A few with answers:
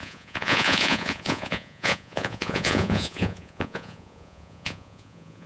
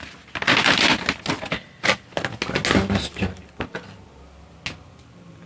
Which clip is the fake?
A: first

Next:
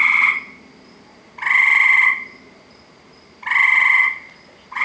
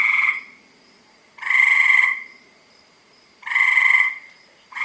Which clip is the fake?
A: second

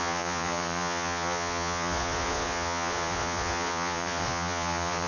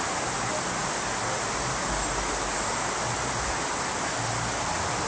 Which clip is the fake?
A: first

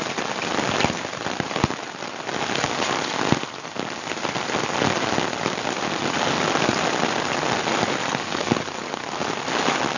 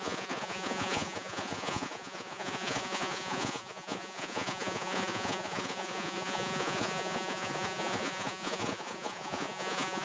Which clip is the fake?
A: second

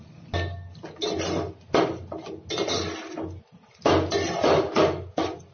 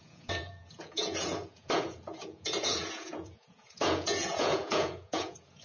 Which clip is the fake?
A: second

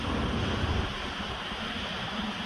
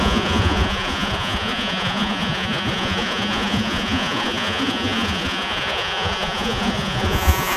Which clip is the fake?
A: second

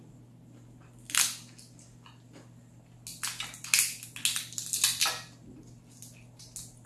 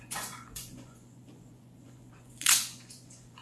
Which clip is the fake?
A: second